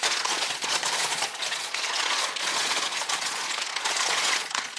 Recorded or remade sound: remade